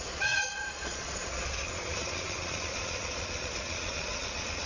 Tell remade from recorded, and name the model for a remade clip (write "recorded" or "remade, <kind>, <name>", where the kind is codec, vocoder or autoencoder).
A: remade, vocoder, Vocos